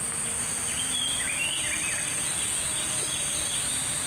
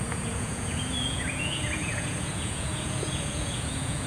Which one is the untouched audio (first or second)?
first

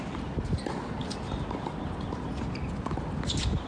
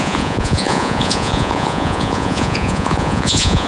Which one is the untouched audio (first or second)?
first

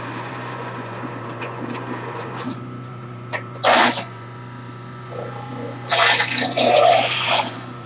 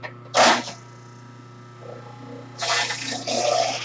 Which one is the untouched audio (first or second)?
second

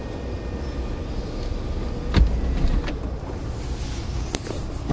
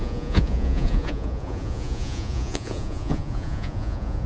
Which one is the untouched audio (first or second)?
first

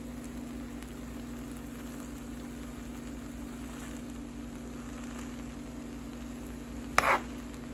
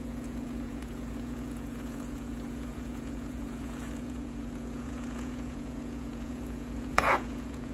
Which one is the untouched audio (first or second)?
first